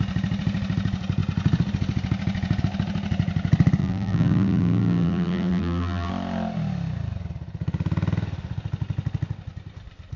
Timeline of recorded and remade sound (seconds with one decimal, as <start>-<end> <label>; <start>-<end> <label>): 0.0-3.8 recorded; 3.8-6.1 remade; 6.1-10.2 recorded